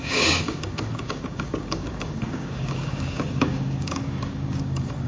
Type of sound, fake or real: fake